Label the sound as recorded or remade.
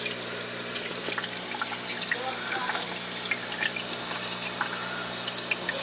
recorded